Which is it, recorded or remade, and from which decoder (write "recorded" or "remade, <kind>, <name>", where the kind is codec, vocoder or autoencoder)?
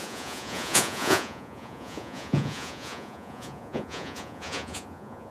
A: remade, vocoder, Vocos